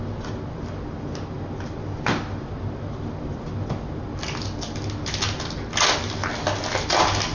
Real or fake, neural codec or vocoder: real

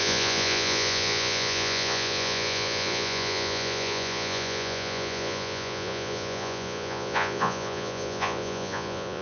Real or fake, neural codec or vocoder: fake, vocoder, Vocos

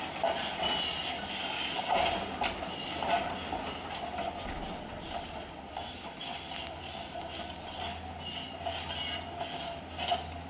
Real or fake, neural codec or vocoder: real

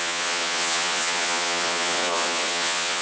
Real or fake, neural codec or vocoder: fake, vocoder, Vocos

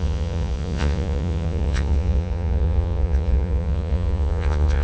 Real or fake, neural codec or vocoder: fake, vocoder, Vocos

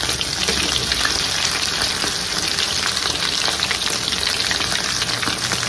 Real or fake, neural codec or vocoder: real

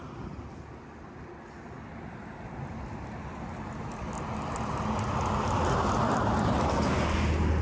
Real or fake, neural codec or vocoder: real